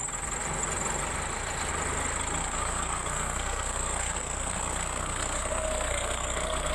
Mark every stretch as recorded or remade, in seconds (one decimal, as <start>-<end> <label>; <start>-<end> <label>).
0.0-2.4 recorded; 2.4-6.7 remade